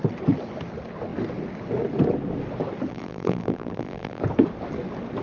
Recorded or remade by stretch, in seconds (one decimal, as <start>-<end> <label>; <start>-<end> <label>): 0.0-2.9 recorded; 2.9-4.2 remade; 4.2-5.2 recorded